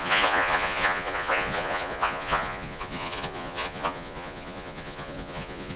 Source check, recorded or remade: remade